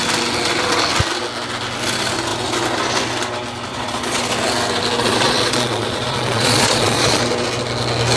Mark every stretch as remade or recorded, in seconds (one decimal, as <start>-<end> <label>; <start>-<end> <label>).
0.0-3.7 recorded; 3.7-4.2 remade; 4.2-5.0 recorded; 5.0-7.2 remade; 7.2-8.2 recorded